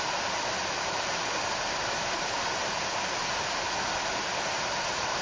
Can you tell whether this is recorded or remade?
recorded